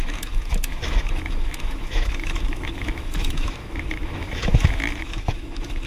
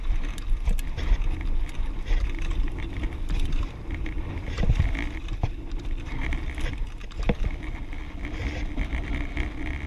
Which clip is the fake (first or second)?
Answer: first